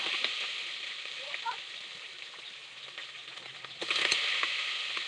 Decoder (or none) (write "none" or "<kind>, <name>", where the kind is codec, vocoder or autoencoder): none